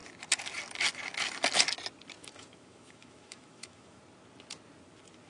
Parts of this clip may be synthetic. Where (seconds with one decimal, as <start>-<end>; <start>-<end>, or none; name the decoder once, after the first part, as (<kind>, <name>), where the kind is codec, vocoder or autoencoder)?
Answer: 2.2-4.0 (autoencoder, DAC-VAE)